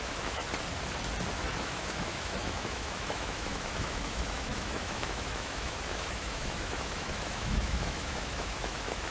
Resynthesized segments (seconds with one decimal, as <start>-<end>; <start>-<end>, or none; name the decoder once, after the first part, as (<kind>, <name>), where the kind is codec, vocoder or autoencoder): 0.0-0.4 (autoencoder, DAC-VAE); 1.3-9.1